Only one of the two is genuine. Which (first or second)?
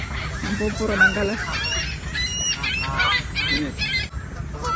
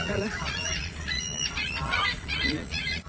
first